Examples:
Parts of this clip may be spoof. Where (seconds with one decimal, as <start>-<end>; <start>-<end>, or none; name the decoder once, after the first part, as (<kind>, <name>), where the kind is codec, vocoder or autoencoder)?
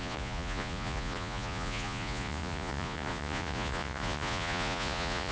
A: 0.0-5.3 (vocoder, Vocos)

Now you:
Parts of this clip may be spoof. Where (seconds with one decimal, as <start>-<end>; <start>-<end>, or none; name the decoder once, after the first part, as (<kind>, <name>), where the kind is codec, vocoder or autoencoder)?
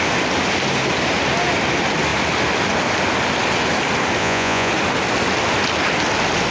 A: 4.2-4.7 (vocoder, Vocos)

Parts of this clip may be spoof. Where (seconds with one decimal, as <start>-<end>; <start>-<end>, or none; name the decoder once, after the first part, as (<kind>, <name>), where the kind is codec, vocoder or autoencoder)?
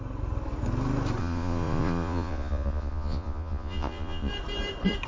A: 1.2-4.3 (vocoder, Vocos)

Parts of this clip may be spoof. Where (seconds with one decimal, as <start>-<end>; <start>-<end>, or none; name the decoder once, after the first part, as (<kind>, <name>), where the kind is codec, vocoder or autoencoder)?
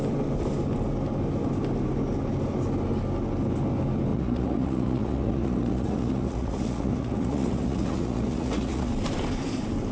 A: 4.1-8.9 (vocoder, Vocos)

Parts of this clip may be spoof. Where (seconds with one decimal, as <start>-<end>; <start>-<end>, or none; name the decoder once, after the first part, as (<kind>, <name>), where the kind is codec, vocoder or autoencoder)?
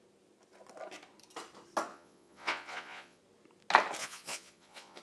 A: 1.9-3.2 (vocoder, Vocos); 4.0-5.0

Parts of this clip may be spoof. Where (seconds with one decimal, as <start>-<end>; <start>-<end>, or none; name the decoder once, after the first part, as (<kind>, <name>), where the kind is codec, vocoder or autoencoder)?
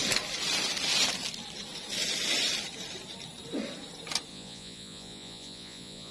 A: 4.3-6.1 (vocoder, Vocos)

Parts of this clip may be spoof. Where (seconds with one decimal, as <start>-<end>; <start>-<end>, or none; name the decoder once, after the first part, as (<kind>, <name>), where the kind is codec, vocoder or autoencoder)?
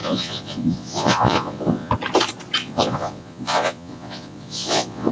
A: 0.0-1.9 (vocoder, Vocos); 2.6-5.1